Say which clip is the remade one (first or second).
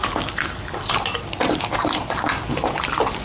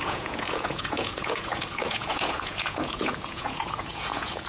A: second